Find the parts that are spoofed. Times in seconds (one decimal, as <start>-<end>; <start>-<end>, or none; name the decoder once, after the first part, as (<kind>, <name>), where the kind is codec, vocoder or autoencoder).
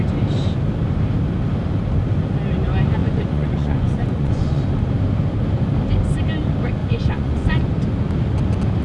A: 3.0-4.6 (vocoder, Vocos); 6.8-7.7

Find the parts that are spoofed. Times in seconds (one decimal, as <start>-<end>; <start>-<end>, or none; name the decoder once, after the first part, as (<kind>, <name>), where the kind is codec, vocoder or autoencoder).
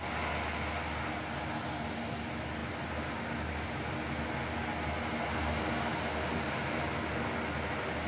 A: none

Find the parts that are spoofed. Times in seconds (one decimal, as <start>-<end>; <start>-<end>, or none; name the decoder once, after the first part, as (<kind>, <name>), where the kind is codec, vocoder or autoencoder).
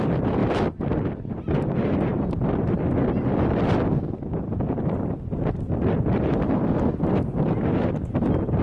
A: none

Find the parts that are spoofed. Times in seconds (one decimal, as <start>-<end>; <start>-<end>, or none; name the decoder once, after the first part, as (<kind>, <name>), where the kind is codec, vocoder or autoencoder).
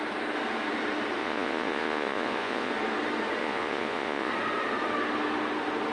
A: 1.2-2.7 (vocoder, Vocos); 3.4-4.3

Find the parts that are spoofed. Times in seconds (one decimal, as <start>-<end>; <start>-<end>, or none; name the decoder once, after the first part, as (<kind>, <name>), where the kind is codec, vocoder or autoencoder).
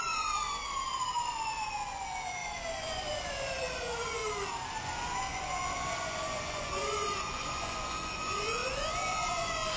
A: 0.0-4.2 (vocoder, Vocos); 4.8-9.8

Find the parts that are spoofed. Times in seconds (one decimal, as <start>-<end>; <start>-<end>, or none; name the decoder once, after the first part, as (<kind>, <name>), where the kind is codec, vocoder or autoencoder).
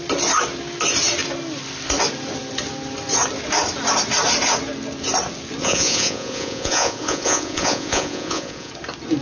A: 5.6-8.7 (vocoder, Vocos)